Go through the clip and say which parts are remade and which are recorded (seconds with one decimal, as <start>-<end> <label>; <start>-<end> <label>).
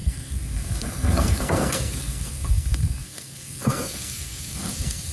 0.0-5.1 remade